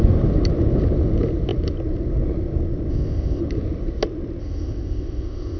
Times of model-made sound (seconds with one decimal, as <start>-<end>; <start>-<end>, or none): 2.9-3.4; 4.4-5.6